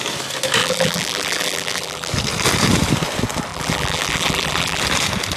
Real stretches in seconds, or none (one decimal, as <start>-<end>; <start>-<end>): 0.0-0.6; 2.1-3.5; 4.8-5.4